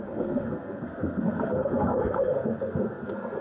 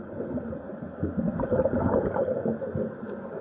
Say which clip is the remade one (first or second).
first